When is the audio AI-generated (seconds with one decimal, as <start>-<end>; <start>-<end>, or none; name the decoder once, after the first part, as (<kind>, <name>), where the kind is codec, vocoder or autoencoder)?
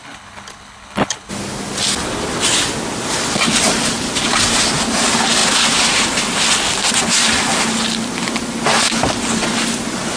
0.0-1.3 (codec, HILCodec)